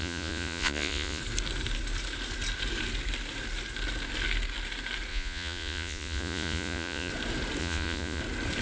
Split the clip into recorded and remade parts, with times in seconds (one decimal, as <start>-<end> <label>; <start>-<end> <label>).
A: 0.0-1.2 remade; 1.2-5.1 recorded; 5.1-7.1 remade; 7.1-7.6 recorded; 7.6-8.2 remade; 8.2-8.6 recorded